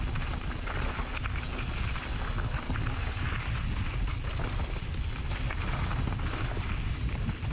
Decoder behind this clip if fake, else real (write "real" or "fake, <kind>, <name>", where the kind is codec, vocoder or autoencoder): real